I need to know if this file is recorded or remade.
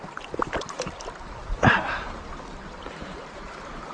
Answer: recorded